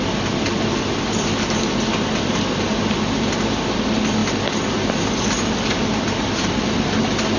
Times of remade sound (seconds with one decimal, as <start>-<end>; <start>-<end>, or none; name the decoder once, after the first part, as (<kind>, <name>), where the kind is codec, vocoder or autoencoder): none